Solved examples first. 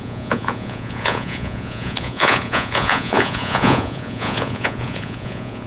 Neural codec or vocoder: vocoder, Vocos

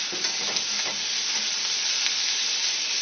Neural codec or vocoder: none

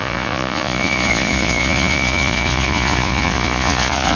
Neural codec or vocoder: vocoder, Vocos